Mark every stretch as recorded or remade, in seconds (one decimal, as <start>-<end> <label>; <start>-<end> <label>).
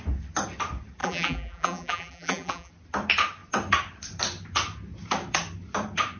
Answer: 0.0-1.0 recorded; 1.0-2.7 remade; 2.7-6.2 recorded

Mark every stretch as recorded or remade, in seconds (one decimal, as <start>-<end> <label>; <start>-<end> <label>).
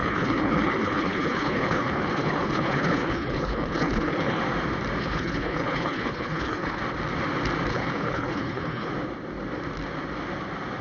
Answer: 0.0-4.4 remade; 4.4-5.0 recorded; 5.0-6.8 remade; 6.8-7.7 recorded; 7.7-8.9 remade; 8.9-10.8 recorded